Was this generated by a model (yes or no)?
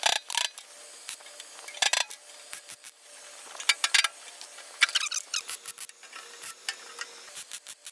no